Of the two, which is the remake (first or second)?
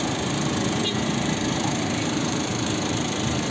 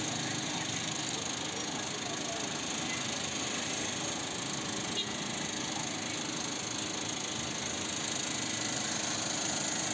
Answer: first